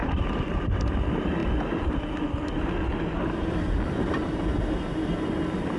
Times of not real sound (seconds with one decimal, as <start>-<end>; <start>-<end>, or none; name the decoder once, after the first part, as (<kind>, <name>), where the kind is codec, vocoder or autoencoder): none